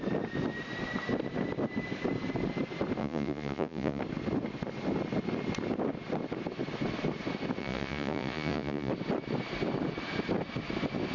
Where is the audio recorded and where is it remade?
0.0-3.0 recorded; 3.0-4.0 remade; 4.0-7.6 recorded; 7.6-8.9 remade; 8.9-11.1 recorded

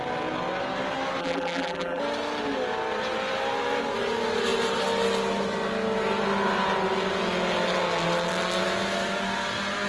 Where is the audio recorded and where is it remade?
0.0-1.2 recorded; 1.2-2.0 remade; 2.0-9.9 recorded

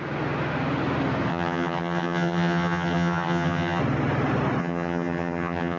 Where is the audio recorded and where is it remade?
0.0-1.3 recorded; 1.3-3.8 remade; 3.8-4.6 recorded; 4.6-5.8 remade

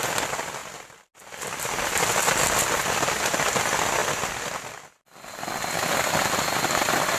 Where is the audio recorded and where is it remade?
0.0-7.2 recorded

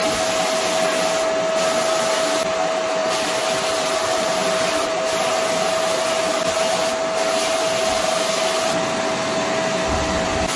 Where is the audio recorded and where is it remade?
0.0-3.0 recorded; 3.0-5.6 remade; 5.6-10.6 recorded

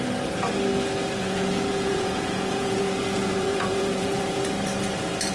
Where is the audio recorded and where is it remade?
0.0-1.2 recorded; 1.2-4.4 remade; 4.4-5.3 recorded